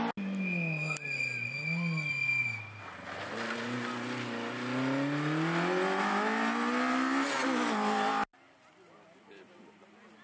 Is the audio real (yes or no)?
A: yes